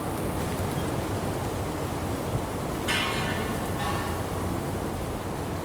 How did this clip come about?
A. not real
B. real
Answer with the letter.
B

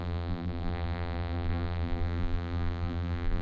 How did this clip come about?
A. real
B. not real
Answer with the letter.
B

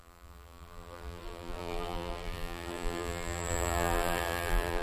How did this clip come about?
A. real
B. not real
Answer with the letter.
B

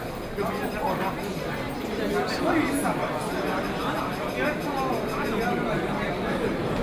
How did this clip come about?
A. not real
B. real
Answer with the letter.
B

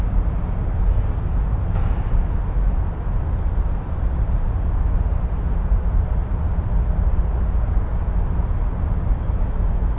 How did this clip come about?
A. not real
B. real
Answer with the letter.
A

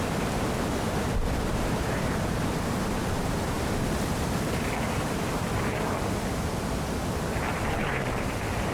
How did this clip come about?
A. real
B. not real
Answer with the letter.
B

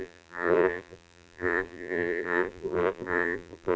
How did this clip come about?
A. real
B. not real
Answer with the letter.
B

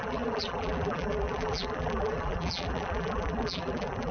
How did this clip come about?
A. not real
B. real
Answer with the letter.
A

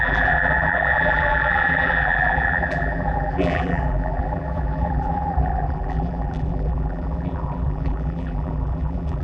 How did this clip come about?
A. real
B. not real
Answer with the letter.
B